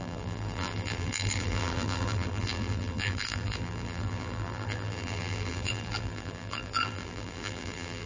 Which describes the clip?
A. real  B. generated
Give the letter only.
B